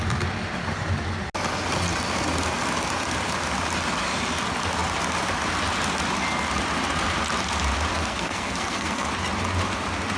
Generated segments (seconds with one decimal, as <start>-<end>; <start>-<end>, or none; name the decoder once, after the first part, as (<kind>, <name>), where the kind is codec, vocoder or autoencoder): 7.9-9.1 (codec, SNAC)